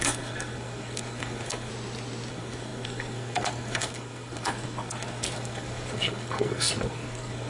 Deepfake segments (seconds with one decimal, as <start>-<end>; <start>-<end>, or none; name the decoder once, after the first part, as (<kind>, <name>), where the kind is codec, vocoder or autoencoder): 0.0-1.7 (codec, SNAC); 2.3-7.5